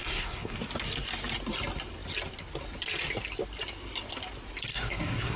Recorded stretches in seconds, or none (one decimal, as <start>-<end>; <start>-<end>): 0.6-4.7